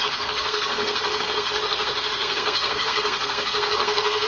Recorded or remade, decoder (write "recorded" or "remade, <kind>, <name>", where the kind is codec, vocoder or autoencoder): remade, codec, SNAC